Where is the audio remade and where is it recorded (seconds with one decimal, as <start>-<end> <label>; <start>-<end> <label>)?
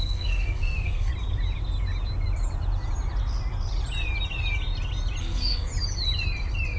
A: 0.0-1.1 remade; 1.1-5.2 recorded; 5.2-5.7 remade; 5.7-6.8 recorded